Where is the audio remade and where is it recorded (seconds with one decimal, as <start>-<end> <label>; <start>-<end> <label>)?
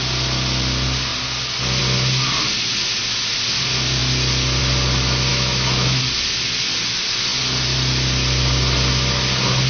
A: 0.0-5.3 recorded; 5.3-6.0 remade; 6.0-9.7 recorded